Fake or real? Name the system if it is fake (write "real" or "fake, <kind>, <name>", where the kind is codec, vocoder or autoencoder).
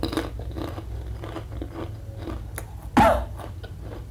real